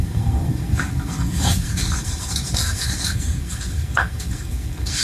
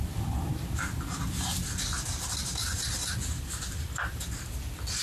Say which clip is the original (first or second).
second